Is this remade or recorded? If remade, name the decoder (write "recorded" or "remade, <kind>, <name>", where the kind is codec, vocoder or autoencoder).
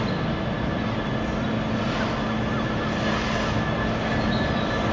recorded